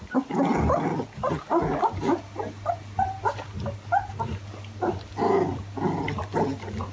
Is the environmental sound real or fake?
real